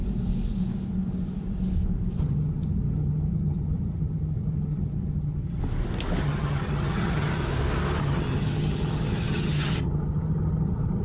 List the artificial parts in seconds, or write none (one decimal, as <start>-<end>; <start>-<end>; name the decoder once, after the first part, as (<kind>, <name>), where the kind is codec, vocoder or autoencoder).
2.2-5.6 (vocoder, HiFi-GAN); 6.2-7.4; 8.0-11.0